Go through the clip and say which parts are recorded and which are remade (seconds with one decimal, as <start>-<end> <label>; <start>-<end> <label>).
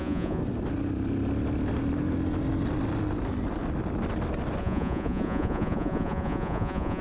0.0-0.4 remade; 0.4-4.6 recorded; 4.6-7.0 remade